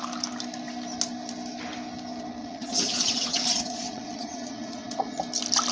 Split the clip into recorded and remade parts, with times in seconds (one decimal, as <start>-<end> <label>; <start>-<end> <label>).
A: 0.0-2.4 recorded; 2.4-5.2 remade; 5.2-5.7 recorded